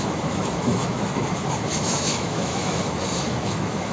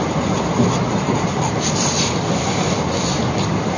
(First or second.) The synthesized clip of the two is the first